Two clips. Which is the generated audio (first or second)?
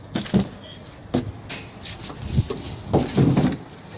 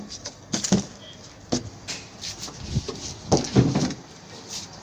first